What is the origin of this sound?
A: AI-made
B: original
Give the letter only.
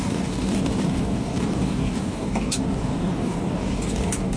A